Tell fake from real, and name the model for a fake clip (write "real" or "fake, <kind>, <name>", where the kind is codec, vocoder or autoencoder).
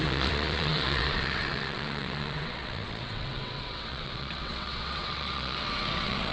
fake, vocoder, WaveNeXt